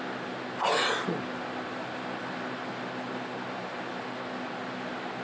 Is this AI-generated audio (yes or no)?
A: no